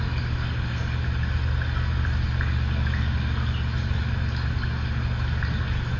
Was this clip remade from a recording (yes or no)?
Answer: no